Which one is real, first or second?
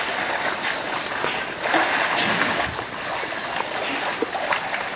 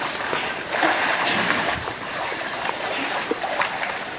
first